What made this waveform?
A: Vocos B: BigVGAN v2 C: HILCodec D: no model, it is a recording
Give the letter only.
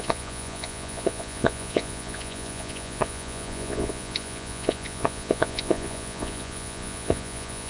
A